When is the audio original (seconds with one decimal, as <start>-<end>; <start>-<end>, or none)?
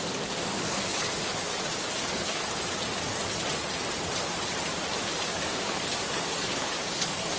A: 1.5-2.0; 2.4-5.0